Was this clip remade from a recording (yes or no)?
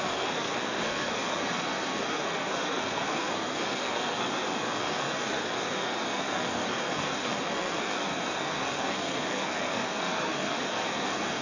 yes